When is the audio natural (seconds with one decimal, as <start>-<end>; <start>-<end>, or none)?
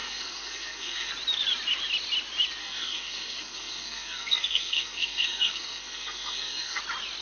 1.1-2.6; 6.8-7.2